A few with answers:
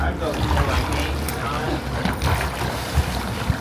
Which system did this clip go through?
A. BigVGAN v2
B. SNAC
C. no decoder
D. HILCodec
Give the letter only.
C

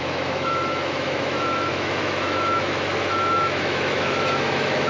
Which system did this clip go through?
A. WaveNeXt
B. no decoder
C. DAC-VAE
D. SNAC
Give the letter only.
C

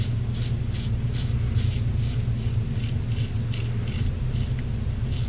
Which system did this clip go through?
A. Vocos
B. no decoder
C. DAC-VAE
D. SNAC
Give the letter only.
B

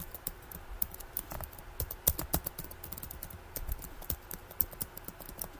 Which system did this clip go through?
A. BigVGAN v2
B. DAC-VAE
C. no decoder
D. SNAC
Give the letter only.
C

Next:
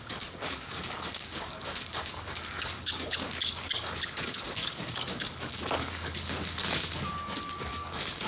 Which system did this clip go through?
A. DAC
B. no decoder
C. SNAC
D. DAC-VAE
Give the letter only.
A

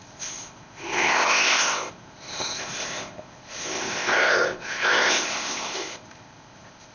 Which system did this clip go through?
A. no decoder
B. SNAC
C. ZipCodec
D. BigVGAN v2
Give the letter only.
C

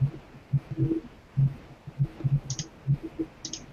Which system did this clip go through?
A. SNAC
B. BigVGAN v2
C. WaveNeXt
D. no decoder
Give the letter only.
D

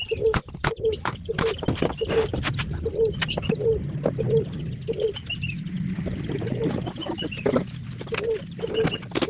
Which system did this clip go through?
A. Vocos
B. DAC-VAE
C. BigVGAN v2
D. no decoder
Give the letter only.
D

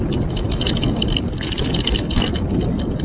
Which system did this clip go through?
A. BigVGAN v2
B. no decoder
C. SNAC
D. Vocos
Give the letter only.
B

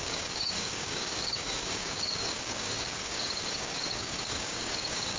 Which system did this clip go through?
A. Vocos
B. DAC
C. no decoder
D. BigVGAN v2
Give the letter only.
B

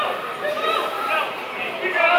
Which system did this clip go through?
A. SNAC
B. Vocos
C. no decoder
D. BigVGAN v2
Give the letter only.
D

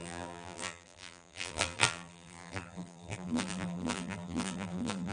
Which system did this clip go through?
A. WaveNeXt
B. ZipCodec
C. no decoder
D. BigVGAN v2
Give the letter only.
D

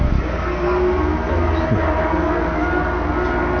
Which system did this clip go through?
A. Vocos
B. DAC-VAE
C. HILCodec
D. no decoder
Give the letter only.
D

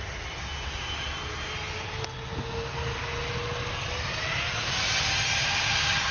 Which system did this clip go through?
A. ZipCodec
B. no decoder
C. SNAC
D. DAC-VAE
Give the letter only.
B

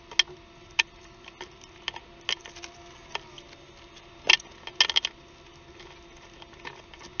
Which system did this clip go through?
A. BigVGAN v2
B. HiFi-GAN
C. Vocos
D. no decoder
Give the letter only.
D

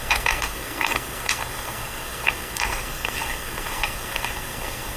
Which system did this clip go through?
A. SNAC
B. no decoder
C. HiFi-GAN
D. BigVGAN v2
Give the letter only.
A